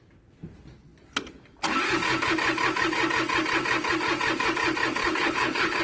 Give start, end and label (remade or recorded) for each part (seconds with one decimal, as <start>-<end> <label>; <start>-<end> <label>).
0.0-5.0 recorded; 5.0-5.8 remade